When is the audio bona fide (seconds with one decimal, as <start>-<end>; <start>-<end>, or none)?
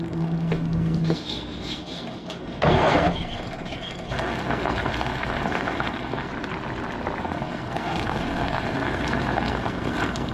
6.3-7.2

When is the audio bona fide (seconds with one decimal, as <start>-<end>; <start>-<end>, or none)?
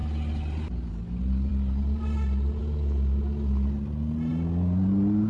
0.0-5.3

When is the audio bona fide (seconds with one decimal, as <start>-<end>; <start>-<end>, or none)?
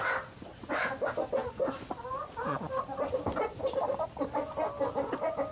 0.0-5.5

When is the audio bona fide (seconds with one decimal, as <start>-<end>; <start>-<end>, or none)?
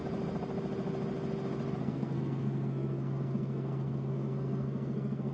0.0-1.8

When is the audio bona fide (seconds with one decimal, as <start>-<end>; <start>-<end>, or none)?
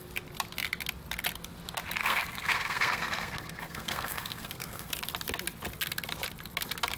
0.0-2.0; 4.9-7.0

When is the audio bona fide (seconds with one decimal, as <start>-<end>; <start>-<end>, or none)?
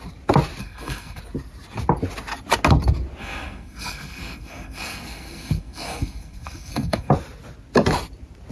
0.0-0.6; 1.2-3.2; 7.1-8.5